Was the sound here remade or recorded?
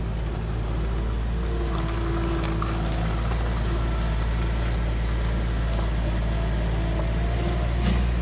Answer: recorded